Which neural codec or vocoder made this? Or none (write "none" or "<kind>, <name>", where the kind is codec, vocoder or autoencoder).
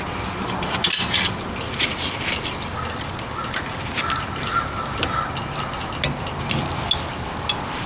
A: none